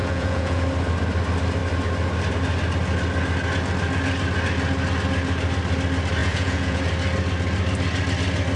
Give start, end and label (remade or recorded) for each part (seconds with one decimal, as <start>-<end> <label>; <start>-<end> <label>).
0.0-0.6 remade; 0.6-6.2 recorded; 6.2-6.8 remade; 6.8-8.6 recorded